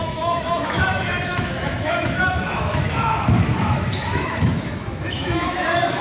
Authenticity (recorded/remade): remade